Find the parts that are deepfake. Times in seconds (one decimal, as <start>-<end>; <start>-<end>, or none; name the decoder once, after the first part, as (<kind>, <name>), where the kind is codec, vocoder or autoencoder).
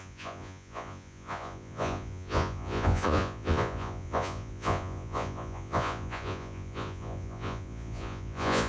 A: 0.0-8.7 (vocoder, Vocos)